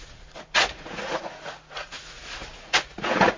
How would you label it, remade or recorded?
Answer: remade